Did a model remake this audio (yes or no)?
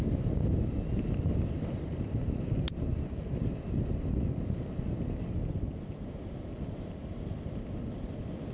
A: no